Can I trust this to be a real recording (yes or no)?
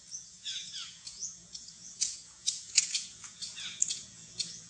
no